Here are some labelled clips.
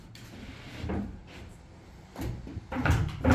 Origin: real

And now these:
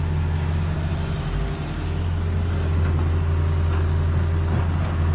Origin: real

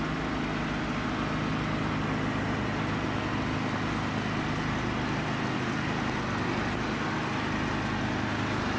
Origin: real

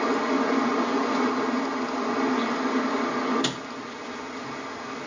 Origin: real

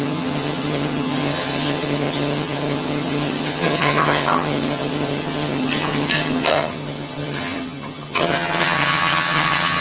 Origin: fake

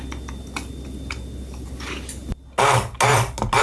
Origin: real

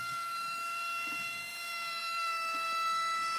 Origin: fake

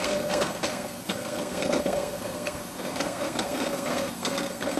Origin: fake